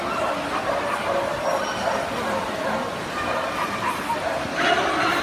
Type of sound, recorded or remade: recorded